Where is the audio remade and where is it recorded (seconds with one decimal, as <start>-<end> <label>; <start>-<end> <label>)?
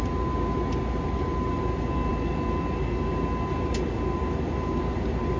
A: 0.0-5.4 recorded